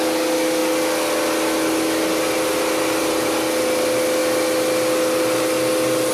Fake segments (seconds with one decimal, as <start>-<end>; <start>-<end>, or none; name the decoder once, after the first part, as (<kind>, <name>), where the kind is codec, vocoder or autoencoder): none